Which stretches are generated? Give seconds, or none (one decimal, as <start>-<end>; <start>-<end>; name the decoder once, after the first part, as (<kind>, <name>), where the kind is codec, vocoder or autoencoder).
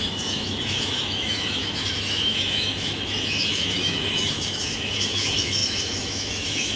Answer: 0.0-6.8 (autoencoder, DAC-VAE)